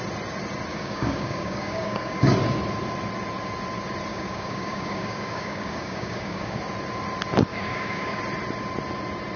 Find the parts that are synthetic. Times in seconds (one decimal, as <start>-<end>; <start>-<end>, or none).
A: 0.7-2.3; 4.1-6.6; 7.5-8.2